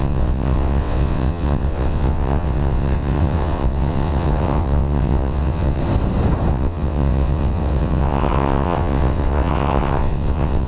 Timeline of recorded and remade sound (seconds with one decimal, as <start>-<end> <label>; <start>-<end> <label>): 0.0-5.8 remade; 5.8-6.5 recorded; 6.5-10.7 remade